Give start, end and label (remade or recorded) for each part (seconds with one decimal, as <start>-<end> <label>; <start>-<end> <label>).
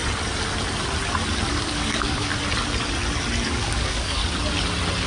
0.0-1.5 recorded; 1.5-2.3 remade; 2.3-3.5 recorded; 3.5-4.2 remade; 4.2-5.1 recorded